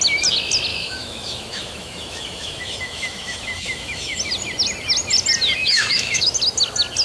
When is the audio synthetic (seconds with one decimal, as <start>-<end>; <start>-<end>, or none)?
0.7-4.2; 5.6-6.3